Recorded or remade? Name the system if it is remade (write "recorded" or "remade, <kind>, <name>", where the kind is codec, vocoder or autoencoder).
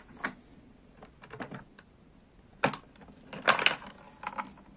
recorded